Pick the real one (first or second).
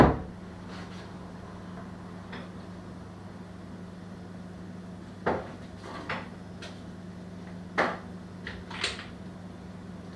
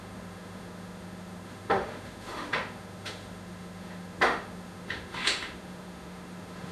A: first